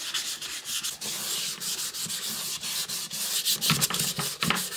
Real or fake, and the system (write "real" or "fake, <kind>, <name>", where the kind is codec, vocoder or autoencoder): real